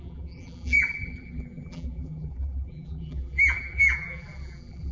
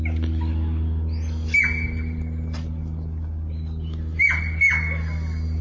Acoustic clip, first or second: second